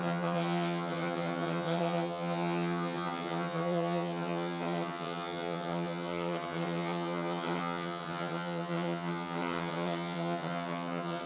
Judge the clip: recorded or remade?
remade